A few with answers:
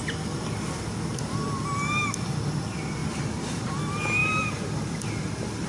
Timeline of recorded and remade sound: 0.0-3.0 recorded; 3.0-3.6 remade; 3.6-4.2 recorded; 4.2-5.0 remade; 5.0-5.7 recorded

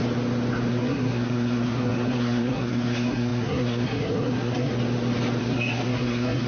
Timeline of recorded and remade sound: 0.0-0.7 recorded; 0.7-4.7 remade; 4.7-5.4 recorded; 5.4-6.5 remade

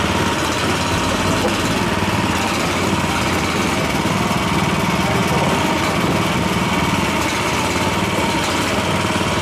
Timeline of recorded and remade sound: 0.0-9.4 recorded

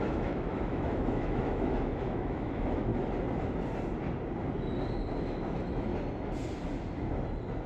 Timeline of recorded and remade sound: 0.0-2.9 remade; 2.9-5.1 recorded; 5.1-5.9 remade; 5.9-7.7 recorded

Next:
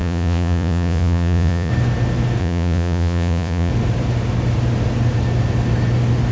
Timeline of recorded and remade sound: 0.0-1.7 remade; 1.7-2.4 recorded; 2.4-3.7 remade; 3.7-6.3 recorded

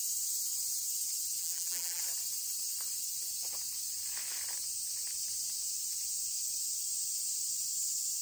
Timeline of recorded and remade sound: 0.0-1.4 recorded; 1.4-2.0 remade; 2.0-8.2 recorded

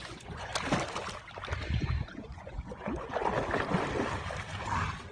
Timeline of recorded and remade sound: 0.0-0.5 remade; 0.5-1.8 recorded; 1.8-3.2 remade; 3.2-5.1 recorded